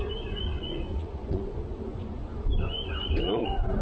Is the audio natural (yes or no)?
no